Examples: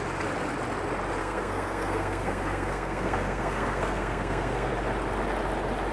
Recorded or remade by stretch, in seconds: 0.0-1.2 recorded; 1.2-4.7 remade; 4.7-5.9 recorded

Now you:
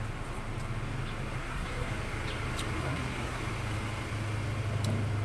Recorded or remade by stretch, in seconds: 0.0-1.4 recorded; 1.4-1.9 remade; 1.9-2.8 recorded; 2.8-3.4 remade; 3.4-5.2 recorded

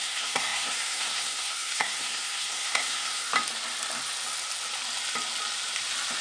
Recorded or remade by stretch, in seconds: 0.0-3.3 remade; 3.3-6.2 recorded

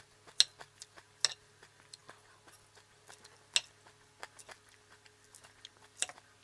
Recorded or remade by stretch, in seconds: 0.0-6.4 recorded

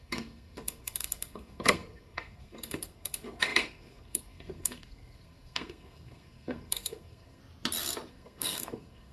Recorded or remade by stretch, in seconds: 0.0-7.4 remade; 7.4-8.1 recorded; 8.1-9.1 remade

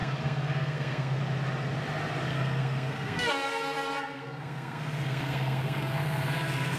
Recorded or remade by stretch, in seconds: 0.0-1.2 remade; 1.2-2.3 recorded; 2.3-6.8 remade

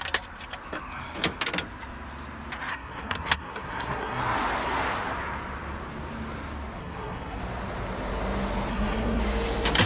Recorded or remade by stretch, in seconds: 0.0-2.7 recorded; 2.7-4.2 remade; 4.2-6.8 recorded; 6.8-7.4 remade; 7.4-8.7 recorded; 8.7-9.2 remade; 9.2-9.9 recorded